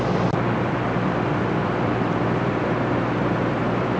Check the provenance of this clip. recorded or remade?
remade